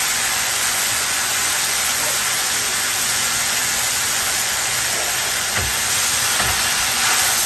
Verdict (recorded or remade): remade